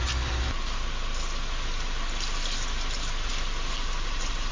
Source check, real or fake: real